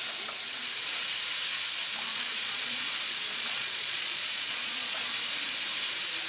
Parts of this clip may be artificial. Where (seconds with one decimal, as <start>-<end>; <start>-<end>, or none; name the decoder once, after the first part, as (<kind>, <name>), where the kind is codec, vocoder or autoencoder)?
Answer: 2.1-5.1 (vocoder, Vocos)